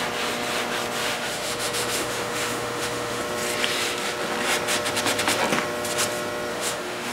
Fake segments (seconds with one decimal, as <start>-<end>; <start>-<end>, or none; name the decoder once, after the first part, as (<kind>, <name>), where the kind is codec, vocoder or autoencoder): 1.0-3.2 (autoencoder, DAC-VAE); 6.5-7.1